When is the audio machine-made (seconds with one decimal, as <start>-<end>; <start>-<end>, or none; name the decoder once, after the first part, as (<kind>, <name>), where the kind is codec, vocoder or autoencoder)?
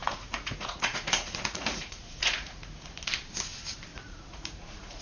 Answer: 0.0-3.0 (vocoder, Vocos); 3.9-5.0